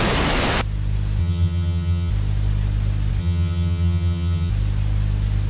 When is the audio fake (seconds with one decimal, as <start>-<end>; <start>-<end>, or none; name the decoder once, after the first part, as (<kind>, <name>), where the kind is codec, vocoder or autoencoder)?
1.2-2.1 (vocoder, HiFi-GAN); 3.2-4.5